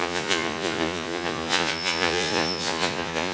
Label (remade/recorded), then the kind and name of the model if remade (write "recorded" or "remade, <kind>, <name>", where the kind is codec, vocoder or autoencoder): remade, vocoder, Vocos